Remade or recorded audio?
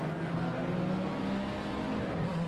recorded